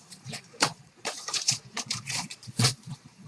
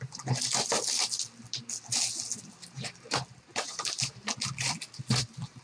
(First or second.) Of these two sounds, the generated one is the first